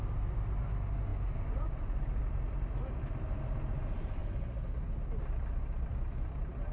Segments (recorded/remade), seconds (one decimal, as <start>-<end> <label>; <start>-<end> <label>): 0.0-6.7 recorded